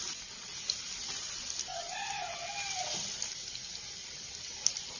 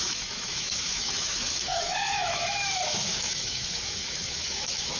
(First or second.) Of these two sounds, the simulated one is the second